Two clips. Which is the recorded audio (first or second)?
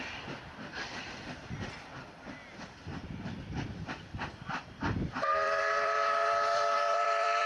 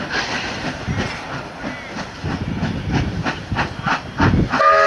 second